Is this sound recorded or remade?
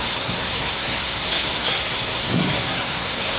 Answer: remade